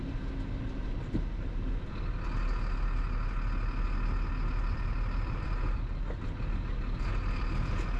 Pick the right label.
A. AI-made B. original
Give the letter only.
B